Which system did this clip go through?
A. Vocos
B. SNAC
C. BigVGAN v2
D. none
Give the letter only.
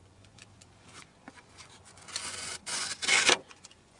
A